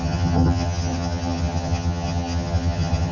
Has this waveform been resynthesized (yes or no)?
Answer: yes